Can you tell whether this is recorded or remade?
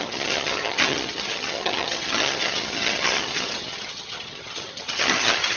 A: remade